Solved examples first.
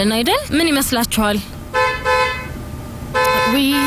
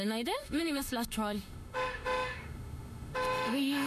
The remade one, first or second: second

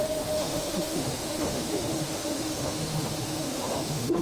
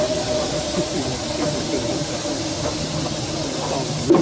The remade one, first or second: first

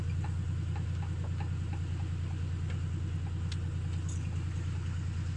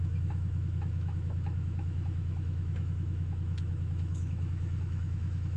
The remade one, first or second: second